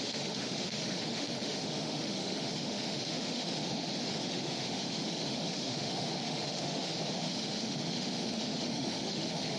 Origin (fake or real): fake